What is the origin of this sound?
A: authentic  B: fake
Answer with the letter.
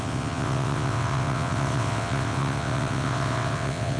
B